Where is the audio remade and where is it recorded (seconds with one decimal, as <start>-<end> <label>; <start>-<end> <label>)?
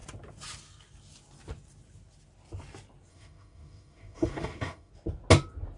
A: 0.0-3.1 recorded; 3.1-4.9 remade; 4.9-5.8 recorded